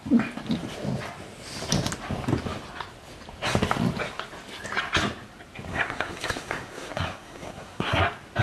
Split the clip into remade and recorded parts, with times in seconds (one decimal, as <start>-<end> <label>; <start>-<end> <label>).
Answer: 0.0-5.7 recorded; 5.7-8.0 remade; 8.0-8.4 recorded